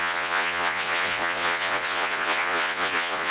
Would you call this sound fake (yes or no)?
yes